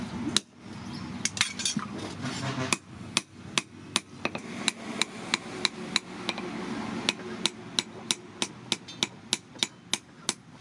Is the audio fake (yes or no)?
no